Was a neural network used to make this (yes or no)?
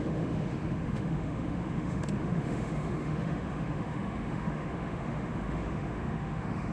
yes